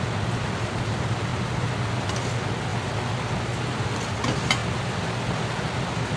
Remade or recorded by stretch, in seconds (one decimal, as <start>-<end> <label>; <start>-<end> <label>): 0.0-6.2 recorded

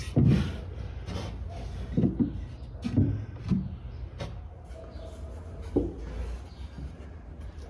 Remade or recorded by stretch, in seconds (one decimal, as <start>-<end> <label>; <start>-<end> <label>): 0.0-7.7 recorded

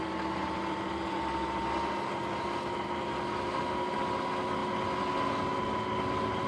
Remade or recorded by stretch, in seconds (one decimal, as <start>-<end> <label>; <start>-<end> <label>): 0.0-6.5 recorded